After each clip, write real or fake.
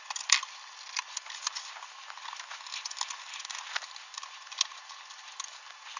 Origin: real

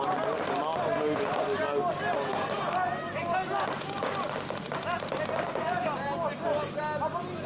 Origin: real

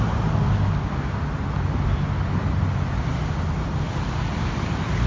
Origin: real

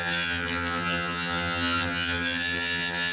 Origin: fake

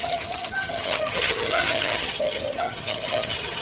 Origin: fake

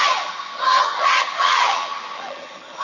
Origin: fake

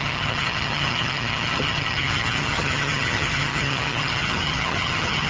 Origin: fake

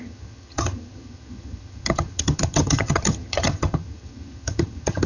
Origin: fake